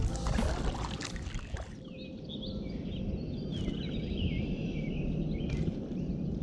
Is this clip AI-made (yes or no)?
no